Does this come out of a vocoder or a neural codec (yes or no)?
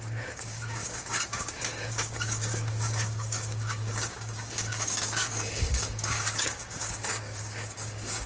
yes